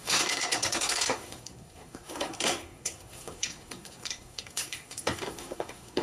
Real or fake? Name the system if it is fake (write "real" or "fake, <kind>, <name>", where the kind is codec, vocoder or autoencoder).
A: fake, codec, SNAC